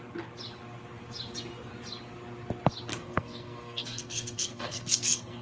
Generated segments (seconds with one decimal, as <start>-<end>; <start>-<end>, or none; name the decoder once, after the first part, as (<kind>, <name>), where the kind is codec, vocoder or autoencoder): 2.9-5.4 (codec, SNAC)